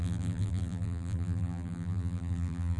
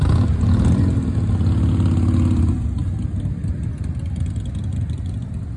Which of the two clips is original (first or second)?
second